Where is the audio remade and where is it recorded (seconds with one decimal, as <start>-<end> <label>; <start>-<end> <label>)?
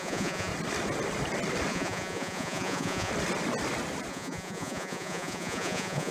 0.0-0.5 remade; 0.5-1.7 recorded; 1.7-3.1 remade; 3.1-4.1 recorded; 4.1-6.1 remade